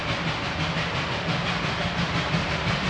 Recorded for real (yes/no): yes